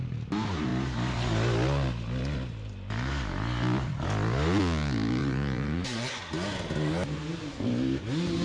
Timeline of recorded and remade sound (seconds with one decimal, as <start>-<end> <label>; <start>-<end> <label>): 0.0-5.2 recorded; 5.2-6.2 remade; 6.2-8.4 recorded